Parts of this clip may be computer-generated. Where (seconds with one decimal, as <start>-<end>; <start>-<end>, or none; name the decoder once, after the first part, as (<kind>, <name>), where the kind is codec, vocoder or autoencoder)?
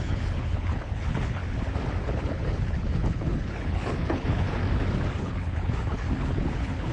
0.0-1.4 (codec, HILCodec); 2.0-4.6; 5.2-6.9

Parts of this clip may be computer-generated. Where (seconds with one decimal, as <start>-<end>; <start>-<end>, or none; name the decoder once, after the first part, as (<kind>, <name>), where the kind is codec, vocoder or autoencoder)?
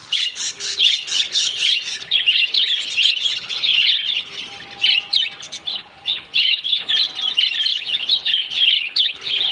0.0-4.4 (codec, HILCodec); 5.7-6.9; 7.7-9.5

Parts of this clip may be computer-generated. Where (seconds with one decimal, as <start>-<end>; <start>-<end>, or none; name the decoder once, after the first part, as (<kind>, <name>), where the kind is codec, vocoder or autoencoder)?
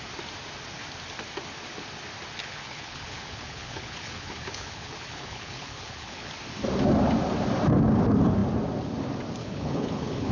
2.4-6.3 (codec, HILCodec); 9.4-10.3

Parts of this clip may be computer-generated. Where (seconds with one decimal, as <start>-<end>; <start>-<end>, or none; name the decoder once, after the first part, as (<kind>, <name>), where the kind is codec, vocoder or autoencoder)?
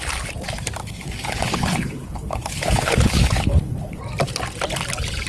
0.8-4.0 (codec, HILCodec)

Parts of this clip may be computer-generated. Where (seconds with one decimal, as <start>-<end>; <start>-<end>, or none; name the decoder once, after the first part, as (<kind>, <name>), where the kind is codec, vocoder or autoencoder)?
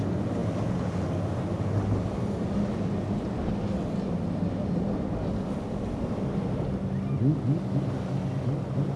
none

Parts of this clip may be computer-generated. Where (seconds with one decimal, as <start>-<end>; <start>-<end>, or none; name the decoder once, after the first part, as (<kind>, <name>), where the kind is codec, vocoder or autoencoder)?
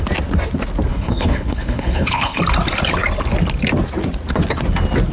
0.9-2.4 (codec, HILCodec)